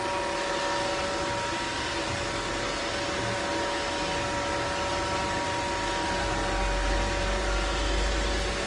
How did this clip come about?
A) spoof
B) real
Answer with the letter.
B